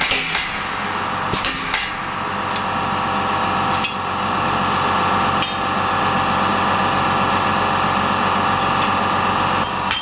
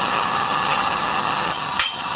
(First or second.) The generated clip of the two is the second